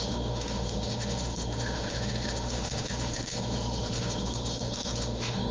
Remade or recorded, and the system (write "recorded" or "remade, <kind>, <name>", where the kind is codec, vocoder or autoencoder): remade, autoencoder, DAC-VAE